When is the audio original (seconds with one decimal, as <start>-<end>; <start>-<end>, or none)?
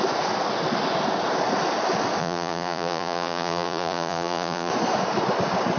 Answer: 0.0-2.2; 4.7-5.8